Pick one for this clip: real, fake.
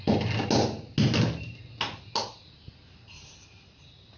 real